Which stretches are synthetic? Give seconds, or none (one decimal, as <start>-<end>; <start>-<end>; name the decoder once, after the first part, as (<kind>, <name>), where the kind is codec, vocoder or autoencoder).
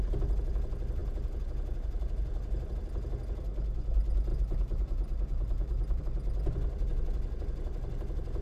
4.3-6.0 (vocoder, BigVGAN v2)